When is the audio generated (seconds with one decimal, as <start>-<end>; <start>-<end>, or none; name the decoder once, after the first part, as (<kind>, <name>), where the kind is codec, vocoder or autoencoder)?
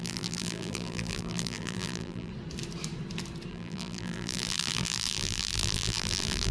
0.0-2.3 (vocoder, BigVGAN v2); 3.5-6.5